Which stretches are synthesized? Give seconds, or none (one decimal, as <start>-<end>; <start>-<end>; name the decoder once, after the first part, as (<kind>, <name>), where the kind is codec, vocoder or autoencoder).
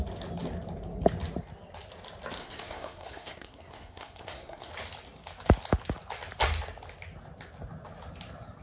2.4-4.7 (codec, SNAC)